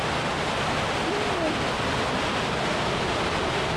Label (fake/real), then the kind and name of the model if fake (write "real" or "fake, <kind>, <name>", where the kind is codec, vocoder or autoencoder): real